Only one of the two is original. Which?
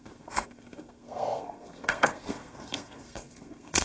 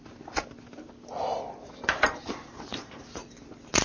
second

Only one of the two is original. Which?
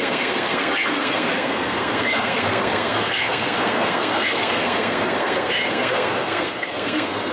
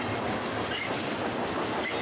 second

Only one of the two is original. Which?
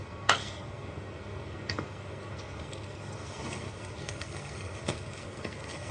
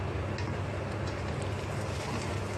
second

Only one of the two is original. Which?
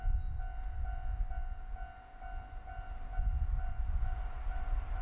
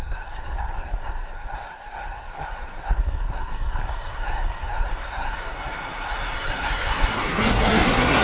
first